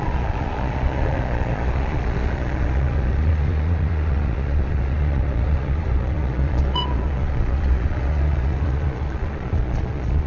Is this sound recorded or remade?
remade